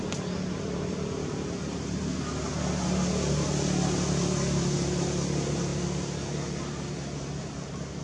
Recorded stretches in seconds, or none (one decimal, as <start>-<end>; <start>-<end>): 0.0-8.0